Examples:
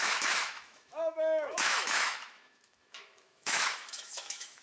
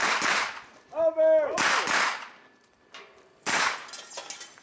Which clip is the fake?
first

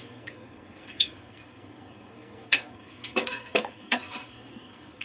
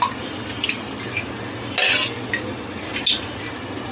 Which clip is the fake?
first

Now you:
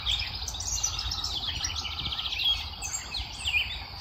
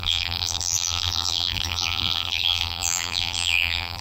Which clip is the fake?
second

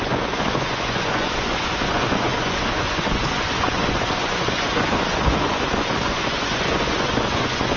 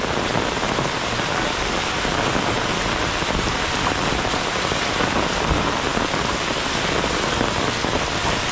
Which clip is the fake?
first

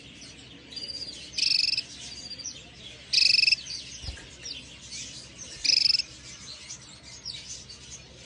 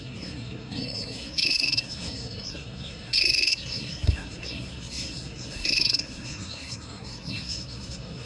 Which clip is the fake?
second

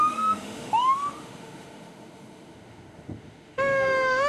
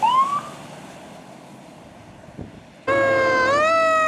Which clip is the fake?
first